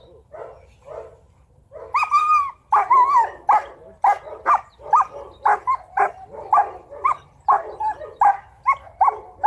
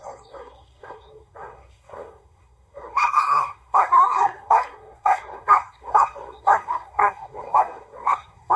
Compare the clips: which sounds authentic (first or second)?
first